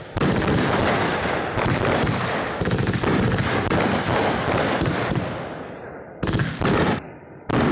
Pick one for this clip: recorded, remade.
recorded